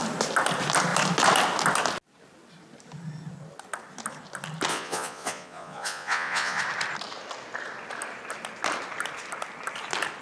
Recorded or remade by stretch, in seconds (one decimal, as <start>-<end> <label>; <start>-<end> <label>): 0.0-4.7 recorded; 4.7-6.6 remade; 6.6-10.2 recorded